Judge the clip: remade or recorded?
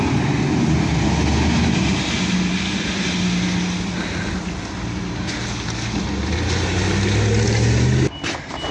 recorded